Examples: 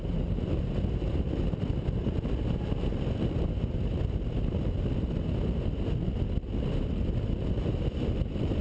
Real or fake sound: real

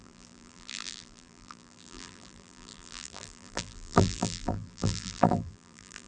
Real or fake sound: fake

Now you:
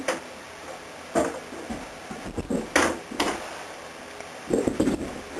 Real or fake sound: real